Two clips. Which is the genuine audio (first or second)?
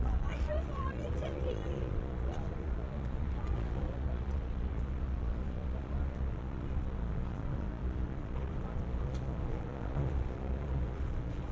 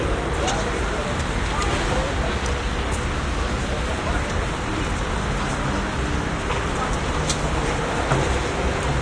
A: second